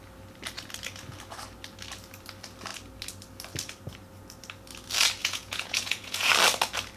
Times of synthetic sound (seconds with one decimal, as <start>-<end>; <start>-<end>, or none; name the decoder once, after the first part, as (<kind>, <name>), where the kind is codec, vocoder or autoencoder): 5.2-6.3 (vocoder, Vocos)